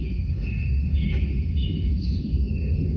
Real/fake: fake